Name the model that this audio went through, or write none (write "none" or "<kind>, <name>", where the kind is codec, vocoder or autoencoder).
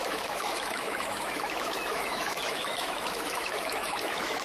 autoencoder, DAC-VAE